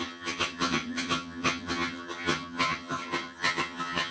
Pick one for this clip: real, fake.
fake